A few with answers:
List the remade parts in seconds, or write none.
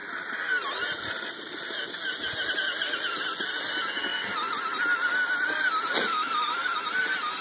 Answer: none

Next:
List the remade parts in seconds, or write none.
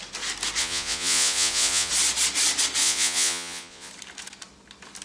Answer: 0.6-1.9; 2.8-3.9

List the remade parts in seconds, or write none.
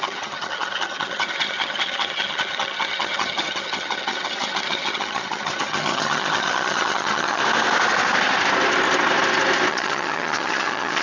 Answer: 0.0-7.4; 9.7-11.0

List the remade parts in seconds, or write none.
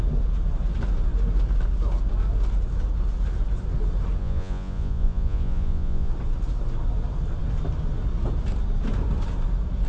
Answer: 4.2-6.1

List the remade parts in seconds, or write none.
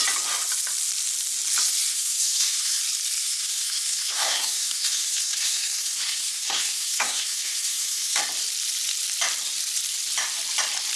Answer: 1.9-2.8; 3.2-8.2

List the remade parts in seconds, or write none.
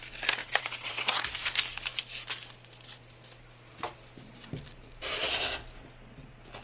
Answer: 0.4-1.2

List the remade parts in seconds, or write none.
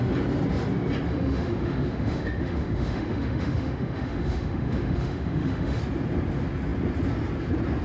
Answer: 1.1-5.8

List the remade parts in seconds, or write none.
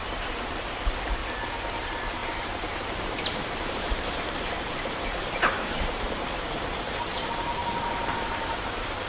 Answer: 0.0-1.2; 1.8-9.1